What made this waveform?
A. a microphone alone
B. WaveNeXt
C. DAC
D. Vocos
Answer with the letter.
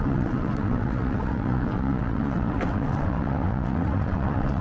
B